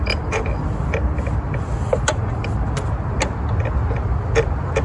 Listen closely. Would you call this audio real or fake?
real